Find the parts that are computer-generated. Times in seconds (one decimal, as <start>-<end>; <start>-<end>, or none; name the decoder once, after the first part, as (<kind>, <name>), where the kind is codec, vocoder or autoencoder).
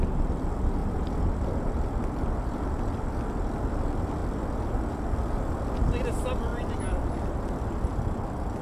0.8-3.1 (vocoder, BigVGAN v2); 6.5-8.6